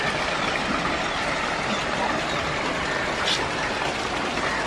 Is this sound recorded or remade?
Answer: recorded